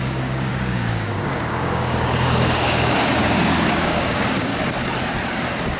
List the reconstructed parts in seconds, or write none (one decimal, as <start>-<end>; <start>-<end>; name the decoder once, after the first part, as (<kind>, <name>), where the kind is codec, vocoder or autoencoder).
0.0-4.5 (codec, DAC)